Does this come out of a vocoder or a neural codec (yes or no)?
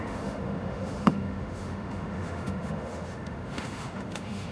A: yes